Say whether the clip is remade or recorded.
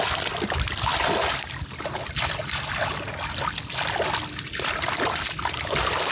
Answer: recorded